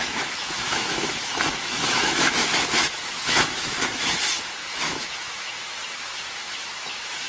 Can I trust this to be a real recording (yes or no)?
no